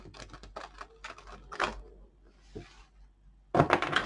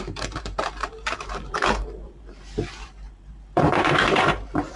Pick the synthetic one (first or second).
second